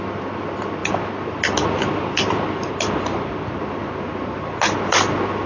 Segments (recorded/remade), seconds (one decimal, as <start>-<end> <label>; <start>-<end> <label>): 0.0-5.5 recorded